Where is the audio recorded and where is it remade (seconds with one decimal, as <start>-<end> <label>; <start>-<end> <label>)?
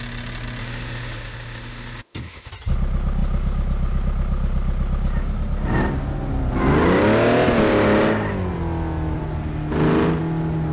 0.0-0.6 recorded; 0.6-2.5 remade; 2.5-10.7 recorded